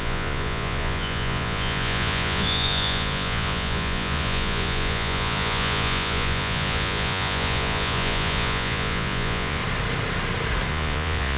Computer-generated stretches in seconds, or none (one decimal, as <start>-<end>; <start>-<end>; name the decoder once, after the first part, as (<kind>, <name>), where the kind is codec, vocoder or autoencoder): 0.0-9.6 (vocoder, Vocos); 10.7-11.4